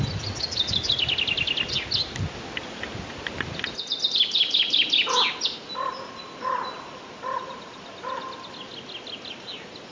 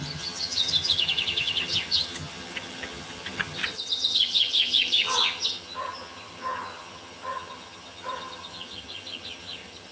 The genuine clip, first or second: first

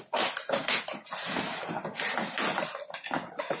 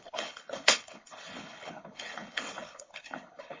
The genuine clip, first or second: first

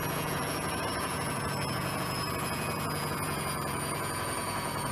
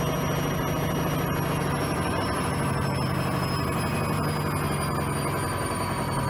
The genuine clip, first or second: second